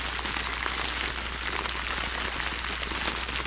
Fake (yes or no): no